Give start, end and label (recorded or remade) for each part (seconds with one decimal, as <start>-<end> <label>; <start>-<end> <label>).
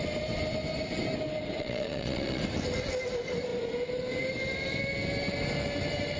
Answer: 0.0-1.6 recorded; 1.6-2.4 remade; 2.4-6.2 recorded